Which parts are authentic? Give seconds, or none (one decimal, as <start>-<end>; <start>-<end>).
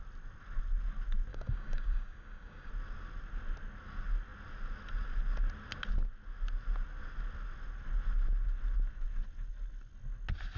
0.0-1.3; 2.7-10.6